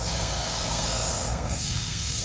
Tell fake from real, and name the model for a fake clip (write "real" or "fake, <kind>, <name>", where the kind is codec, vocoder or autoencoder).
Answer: fake, codec, SNAC